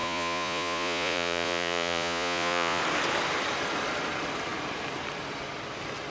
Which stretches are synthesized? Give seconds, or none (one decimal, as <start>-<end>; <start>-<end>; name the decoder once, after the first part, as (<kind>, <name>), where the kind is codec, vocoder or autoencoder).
0.0-2.8 (vocoder, Vocos)